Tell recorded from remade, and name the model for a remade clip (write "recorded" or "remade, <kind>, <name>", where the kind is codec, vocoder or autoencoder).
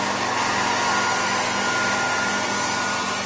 recorded